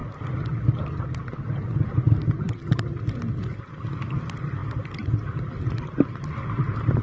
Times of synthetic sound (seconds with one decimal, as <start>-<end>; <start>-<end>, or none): none